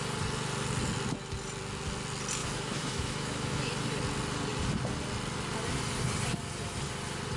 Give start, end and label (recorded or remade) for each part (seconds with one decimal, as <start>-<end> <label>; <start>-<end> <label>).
0.0-2.4 recorded; 2.4-3.7 remade; 3.7-7.4 recorded